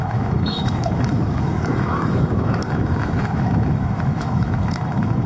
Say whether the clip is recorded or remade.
remade